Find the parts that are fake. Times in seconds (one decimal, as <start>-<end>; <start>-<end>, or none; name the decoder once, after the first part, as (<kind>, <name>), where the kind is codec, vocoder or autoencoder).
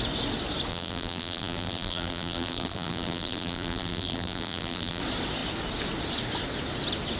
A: 0.7-5.0 (vocoder, BigVGAN v2)